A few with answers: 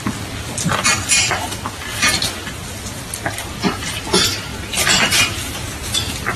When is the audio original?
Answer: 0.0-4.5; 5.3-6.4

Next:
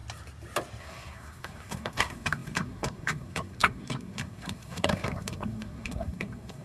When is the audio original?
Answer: 0.0-0.8

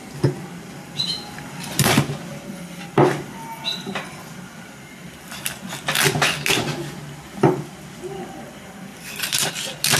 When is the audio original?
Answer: 0.0-10.0

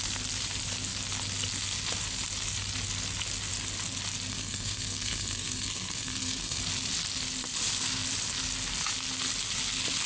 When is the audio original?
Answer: 0.0-4.3; 6.6-10.1

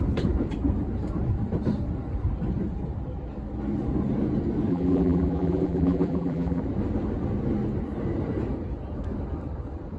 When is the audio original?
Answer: 0.0-4.7; 6.6-10.0